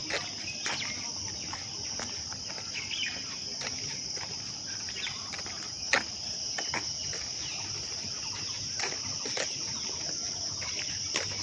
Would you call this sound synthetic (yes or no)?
no